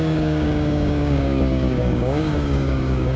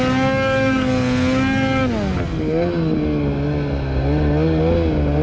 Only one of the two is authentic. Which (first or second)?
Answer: second